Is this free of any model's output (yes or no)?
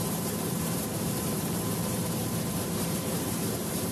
no